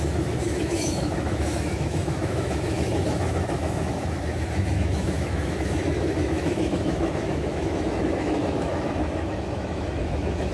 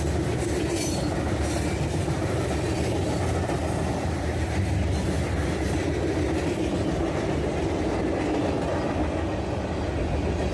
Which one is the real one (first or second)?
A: second